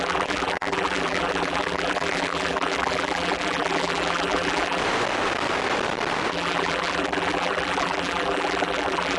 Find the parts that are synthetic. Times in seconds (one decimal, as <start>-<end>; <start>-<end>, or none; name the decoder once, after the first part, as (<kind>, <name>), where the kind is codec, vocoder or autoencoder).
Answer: 0.0-4.8 (vocoder, BigVGAN v2); 6.3-9.2